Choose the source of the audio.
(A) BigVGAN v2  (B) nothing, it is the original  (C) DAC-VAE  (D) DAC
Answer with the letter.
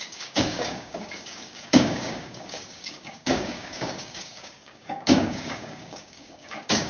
D